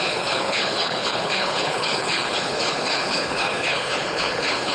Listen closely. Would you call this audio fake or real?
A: fake